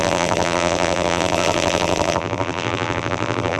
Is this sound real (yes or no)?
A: no